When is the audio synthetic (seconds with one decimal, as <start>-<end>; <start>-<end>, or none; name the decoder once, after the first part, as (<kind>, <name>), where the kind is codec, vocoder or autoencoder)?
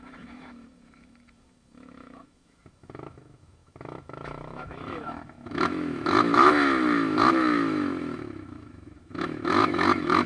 0.0-10.3 (autoencoder, DAC-VAE)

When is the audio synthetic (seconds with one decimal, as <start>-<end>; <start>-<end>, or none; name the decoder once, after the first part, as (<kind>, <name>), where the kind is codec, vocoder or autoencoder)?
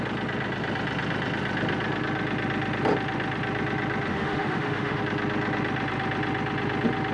4.1-5.0 (autoencoder, DAC-VAE)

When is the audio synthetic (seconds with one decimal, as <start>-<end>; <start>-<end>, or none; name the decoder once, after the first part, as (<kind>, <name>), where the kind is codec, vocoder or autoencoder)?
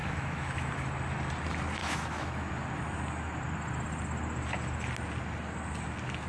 0.0-0.7 (autoencoder, DAC-VAE); 1.8-2.5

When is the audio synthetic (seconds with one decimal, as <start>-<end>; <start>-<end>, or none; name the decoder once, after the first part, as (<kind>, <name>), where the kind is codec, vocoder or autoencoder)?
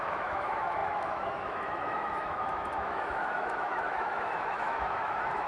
0.0-5.5 (autoencoder, DAC-VAE)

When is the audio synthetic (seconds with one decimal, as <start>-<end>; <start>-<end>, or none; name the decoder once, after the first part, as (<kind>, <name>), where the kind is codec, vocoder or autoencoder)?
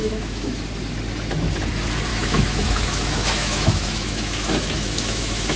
0.0-0.6 (autoencoder, DAC-VAE); 2.1-5.6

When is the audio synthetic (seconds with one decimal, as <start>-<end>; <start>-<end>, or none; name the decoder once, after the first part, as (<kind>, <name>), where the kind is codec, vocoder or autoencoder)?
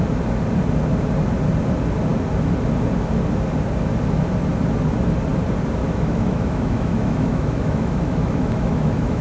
5.8-9.2 (autoencoder, DAC-VAE)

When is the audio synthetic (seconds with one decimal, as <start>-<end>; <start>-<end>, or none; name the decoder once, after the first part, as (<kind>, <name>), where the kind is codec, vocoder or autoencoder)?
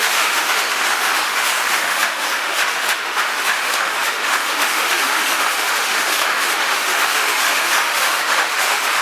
0.0-9.0 (autoencoder, DAC-VAE)